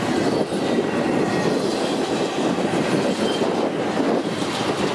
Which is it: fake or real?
real